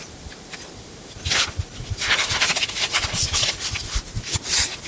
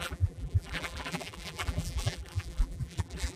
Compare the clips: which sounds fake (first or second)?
second